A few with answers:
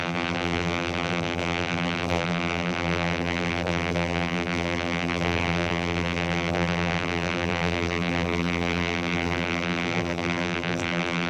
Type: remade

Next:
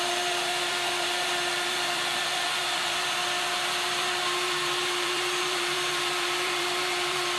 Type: remade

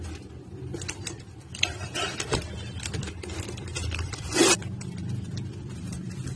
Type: remade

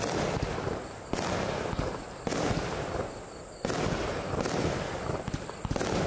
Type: recorded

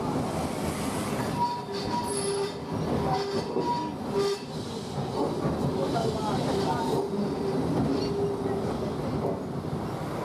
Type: recorded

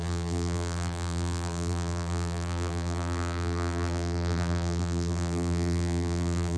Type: remade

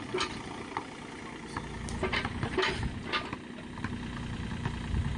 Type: recorded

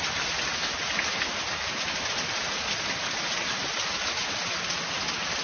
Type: recorded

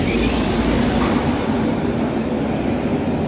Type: recorded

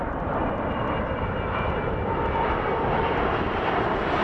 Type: remade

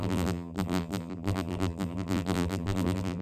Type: remade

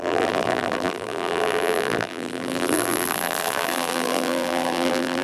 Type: remade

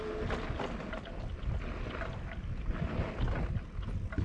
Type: recorded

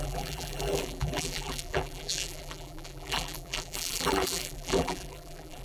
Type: remade